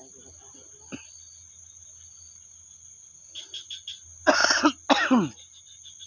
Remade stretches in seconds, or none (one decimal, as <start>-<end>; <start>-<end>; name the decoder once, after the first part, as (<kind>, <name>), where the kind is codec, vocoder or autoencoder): none